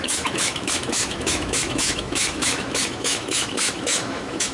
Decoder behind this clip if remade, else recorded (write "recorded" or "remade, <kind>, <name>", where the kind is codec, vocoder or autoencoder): remade, autoencoder, DAC-VAE